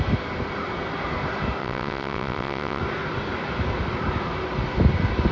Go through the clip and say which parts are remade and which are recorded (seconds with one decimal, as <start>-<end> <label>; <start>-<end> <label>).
0.0-1.6 recorded; 1.6-2.8 remade; 2.8-5.3 recorded